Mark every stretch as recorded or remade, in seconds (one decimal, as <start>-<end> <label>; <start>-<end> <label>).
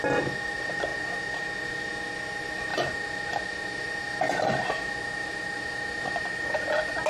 0.0-7.1 recorded